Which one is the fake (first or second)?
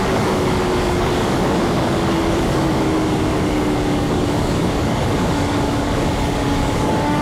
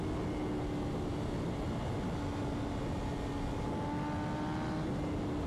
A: first